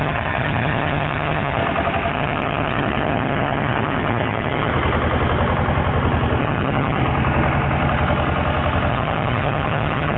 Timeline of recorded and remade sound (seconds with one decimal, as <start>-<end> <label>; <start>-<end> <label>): 0.0-1.6 remade; 1.6-2.1 recorded; 2.1-4.7 remade; 4.7-6.4 recorded; 6.4-7.0 remade; 7.0-8.9 recorded; 8.9-10.2 remade